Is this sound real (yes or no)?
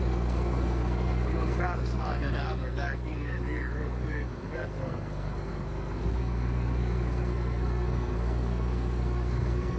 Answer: no